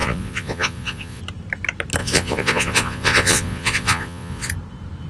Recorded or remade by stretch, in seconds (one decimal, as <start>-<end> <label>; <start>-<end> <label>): 0.0-1.2 remade; 1.2-2.0 recorded; 2.0-4.5 remade; 4.5-5.1 recorded